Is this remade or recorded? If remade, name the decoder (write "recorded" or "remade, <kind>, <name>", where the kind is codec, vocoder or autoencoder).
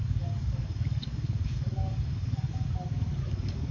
remade, codec, DAC